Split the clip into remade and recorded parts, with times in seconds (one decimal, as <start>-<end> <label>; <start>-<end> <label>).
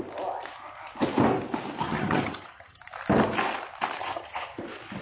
0.0-1.8 recorded; 1.8-2.8 remade; 2.8-4.0 recorded; 4.0-4.6 remade; 4.6-5.0 recorded